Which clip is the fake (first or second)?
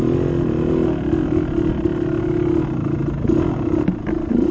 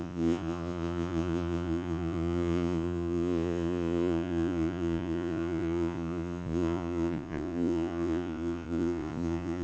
second